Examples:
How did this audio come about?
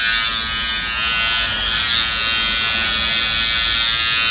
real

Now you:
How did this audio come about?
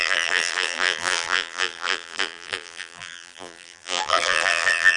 fake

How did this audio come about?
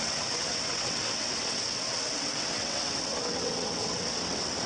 fake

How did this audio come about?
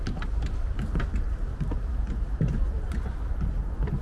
real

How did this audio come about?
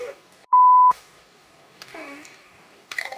fake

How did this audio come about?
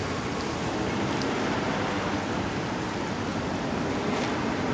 real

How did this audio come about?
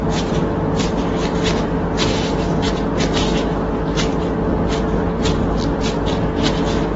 real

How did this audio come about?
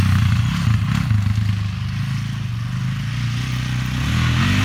real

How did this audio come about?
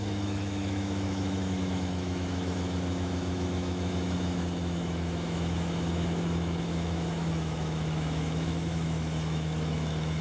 fake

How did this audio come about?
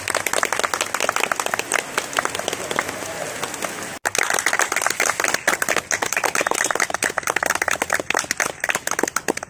real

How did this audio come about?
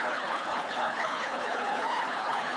fake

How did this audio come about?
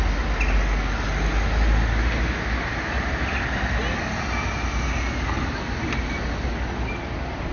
real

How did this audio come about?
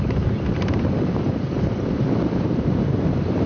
real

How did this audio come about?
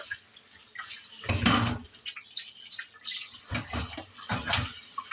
real